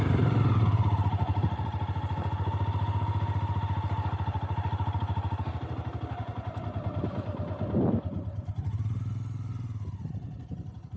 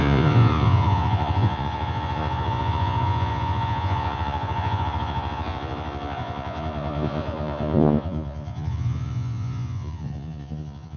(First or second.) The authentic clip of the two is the first